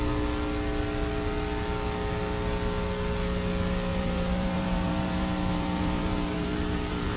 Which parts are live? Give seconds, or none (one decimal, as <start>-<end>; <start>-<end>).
0.0-3.9